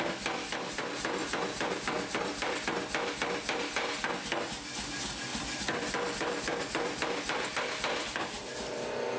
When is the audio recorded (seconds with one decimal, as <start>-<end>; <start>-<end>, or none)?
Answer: 0.0-1.2; 2.5-5.3; 8.7-9.2